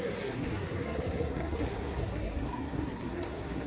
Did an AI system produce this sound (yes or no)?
yes